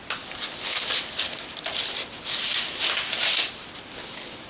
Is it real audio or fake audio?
real